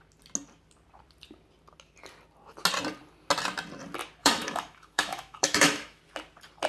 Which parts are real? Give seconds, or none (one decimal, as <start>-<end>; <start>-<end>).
0.0-4.2; 6.0-6.7